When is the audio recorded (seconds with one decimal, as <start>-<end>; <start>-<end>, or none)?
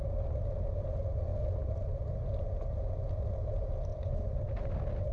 0.0-3.9; 4.4-5.1